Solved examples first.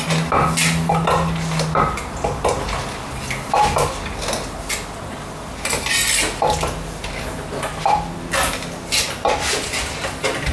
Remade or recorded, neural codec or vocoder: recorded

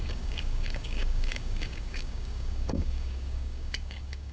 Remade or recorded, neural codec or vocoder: remade, codec, DAC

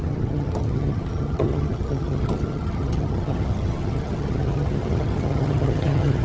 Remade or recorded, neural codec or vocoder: remade, vocoder, HiFi-GAN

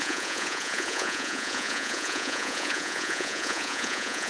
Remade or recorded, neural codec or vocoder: remade, vocoder, Vocos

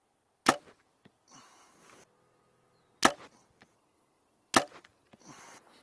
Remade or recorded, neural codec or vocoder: recorded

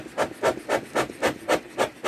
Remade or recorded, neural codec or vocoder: recorded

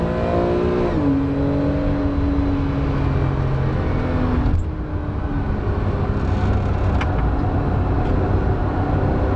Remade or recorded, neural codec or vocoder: recorded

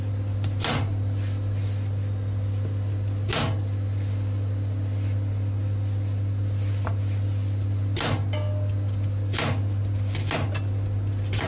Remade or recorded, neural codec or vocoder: recorded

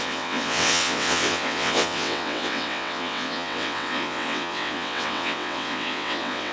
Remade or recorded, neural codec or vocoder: remade, vocoder, WaveNeXt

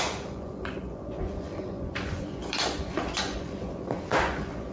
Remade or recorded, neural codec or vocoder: remade, vocoder, Vocos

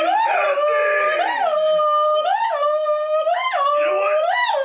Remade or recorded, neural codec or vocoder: recorded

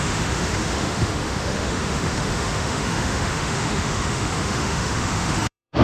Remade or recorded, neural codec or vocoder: remade, autoencoder, DAC-VAE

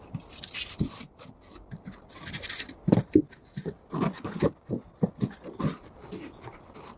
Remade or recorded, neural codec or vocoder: recorded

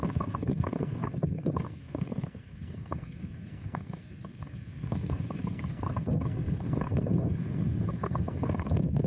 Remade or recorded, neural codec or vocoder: remade, codec, SNAC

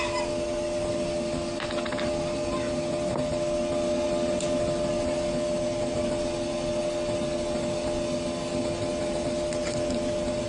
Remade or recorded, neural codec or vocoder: recorded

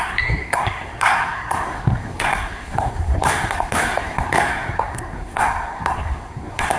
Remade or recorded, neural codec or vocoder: remade, codec, SNAC